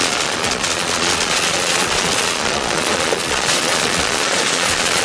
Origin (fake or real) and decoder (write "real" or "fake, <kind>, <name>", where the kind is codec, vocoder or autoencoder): fake, vocoder, Vocos